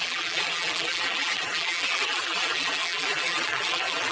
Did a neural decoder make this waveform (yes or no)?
yes